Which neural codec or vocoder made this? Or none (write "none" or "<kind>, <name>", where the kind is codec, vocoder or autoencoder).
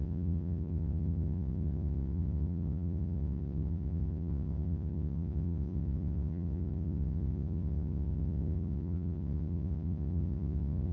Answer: vocoder, Vocos